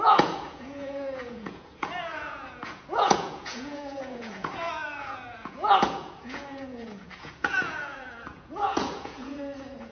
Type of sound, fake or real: fake